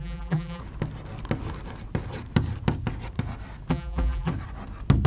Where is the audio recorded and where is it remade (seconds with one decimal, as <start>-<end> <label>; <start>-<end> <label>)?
0.0-0.6 remade; 0.6-3.7 recorded; 3.7-4.3 remade; 4.3-5.1 recorded